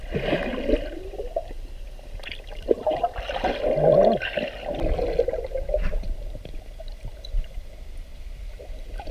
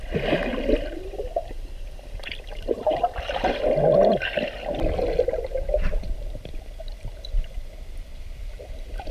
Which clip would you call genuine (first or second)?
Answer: first